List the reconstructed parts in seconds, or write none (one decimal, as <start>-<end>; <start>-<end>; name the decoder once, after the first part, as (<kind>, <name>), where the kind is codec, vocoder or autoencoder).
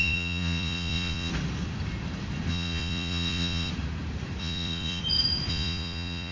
0.0-1.3 (vocoder, Vocos); 2.5-3.7; 4.4-5.0; 5.5-6.3